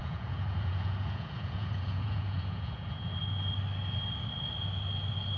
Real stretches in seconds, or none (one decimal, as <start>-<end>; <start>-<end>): 3.2-5.4